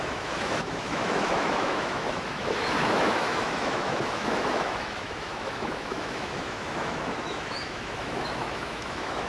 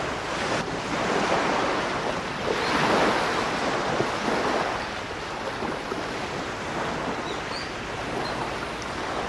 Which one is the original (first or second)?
second